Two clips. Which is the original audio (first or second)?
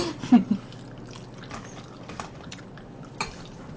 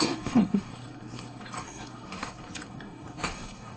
first